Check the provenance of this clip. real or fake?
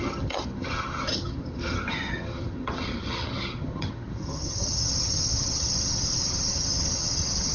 fake